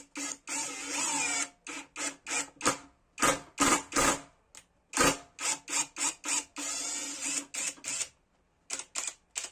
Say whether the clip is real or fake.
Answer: real